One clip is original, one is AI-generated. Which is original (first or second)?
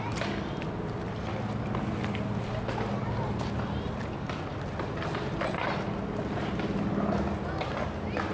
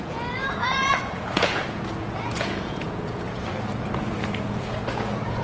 first